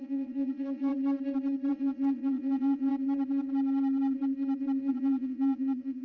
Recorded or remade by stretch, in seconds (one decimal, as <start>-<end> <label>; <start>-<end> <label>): 0.0-0.9 remade; 0.9-1.7 recorded; 1.7-2.9 remade; 2.9-4.9 recorded; 4.9-6.0 remade